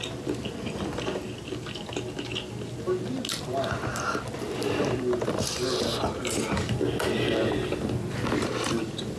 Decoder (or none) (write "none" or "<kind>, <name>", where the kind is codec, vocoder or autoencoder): none